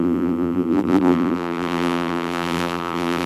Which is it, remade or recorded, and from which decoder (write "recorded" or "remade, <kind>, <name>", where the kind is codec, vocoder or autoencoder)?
remade, vocoder, BigVGAN v2